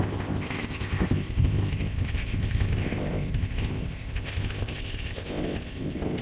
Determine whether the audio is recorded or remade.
remade